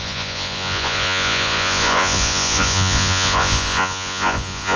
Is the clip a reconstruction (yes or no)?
yes